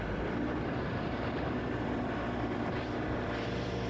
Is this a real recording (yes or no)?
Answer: no